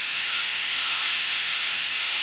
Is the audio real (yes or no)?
no